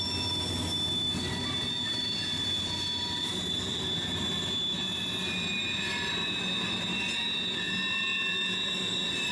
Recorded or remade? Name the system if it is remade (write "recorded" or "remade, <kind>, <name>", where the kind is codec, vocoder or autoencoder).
recorded